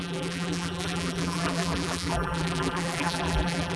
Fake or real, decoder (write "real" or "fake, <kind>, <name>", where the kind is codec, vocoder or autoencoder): fake, vocoder, BigVGAN v2